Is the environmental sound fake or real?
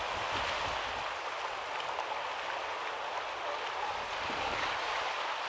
real